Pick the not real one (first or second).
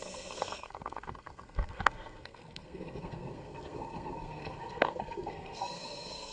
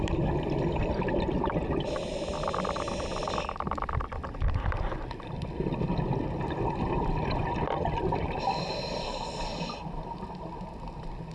first